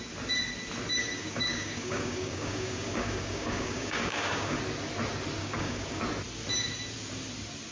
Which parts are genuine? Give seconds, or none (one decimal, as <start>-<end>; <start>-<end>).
0.0-1.0; 4.6-5.4; 6.0-7.7